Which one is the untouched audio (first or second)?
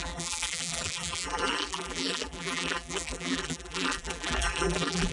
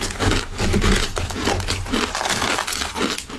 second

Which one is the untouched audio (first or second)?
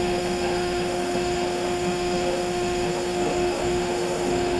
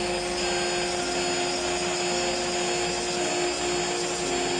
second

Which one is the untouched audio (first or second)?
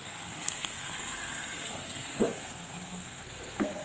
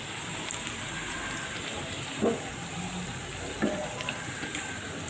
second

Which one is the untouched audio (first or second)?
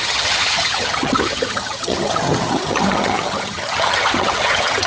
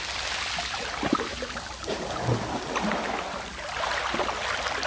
second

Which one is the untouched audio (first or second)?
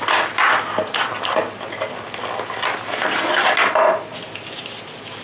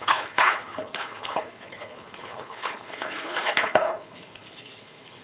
first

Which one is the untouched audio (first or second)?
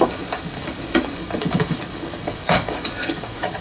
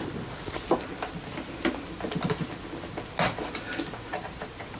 second